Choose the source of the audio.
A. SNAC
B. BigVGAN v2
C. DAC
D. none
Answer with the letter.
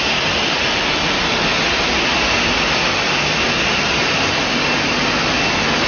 D